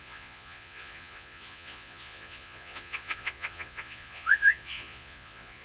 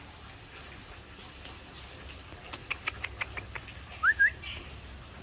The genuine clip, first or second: second